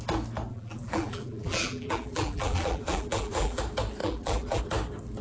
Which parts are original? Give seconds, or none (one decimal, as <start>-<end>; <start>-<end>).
0.0-0.5; 3.6-4.0; 4.6-5.2